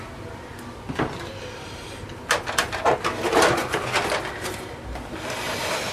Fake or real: real